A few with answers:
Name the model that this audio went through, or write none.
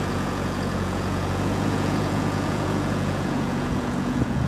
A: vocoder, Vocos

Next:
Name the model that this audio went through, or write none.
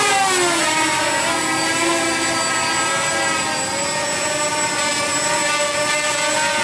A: none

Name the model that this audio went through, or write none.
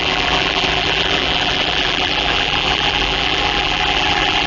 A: vocoder, BigVGAN v2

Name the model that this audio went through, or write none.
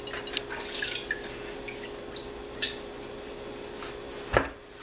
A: none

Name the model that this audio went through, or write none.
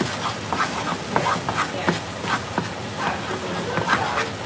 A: none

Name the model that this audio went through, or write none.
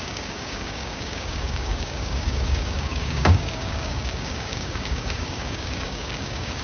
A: codec, DAC